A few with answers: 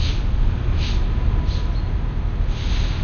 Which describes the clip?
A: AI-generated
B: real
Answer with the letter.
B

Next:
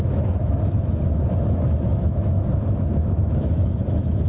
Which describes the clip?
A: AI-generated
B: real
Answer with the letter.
A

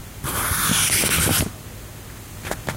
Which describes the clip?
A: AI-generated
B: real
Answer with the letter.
B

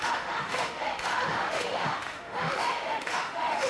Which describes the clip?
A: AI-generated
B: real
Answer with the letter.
A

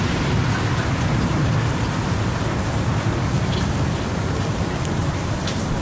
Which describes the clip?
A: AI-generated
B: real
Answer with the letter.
B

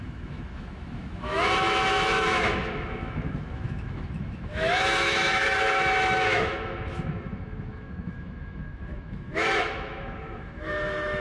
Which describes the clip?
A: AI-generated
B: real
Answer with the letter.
A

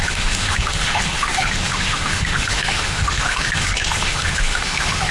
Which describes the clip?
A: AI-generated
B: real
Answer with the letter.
A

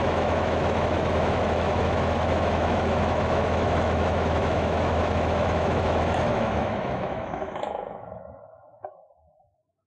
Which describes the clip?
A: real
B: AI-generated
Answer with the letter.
B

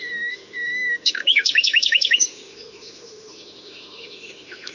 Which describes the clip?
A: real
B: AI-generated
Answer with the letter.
B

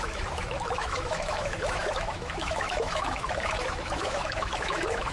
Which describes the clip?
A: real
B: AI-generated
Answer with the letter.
B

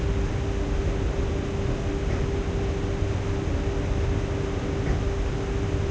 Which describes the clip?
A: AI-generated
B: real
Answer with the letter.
B